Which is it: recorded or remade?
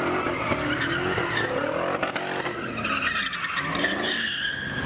recorded